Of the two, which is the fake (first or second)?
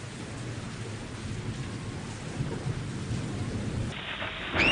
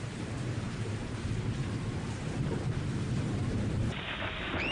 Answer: second